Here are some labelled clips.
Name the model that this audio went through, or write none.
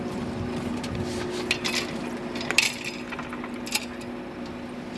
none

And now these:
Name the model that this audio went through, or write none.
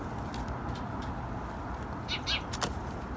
none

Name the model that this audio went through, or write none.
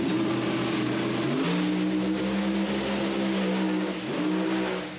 none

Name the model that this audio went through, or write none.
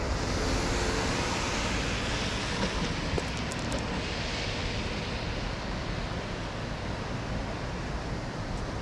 none